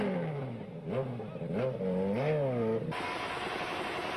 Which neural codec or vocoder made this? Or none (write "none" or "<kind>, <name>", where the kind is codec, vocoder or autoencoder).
none